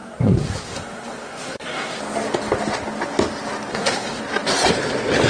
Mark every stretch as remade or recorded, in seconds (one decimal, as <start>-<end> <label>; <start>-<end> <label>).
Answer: 0.0-2.0 remade; 2.0-3.7 recorded; 3.7-4.2 remade; 4.2-5.3 recorded